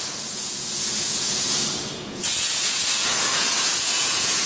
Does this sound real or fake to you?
fake